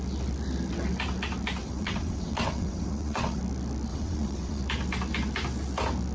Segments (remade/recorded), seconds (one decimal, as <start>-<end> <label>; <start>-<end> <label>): 0.0-1.6 recorded; 1.6-3.4 remade; 3.4-3.9 recorded; 3.9-4.6 remade; 4.6-6.1 recorded